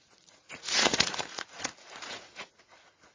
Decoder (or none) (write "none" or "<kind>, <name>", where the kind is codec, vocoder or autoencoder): vocoder, Vocos